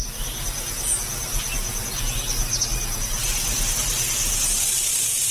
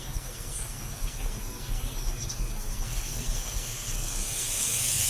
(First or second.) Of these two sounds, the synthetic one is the second